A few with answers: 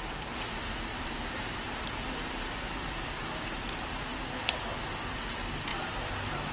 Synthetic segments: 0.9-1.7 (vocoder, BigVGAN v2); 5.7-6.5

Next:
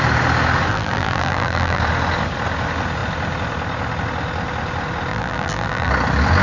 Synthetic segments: 0.7-1.8 (vocoder, BigVGAN v2); 5.1-5.9